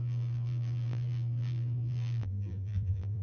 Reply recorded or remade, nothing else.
remade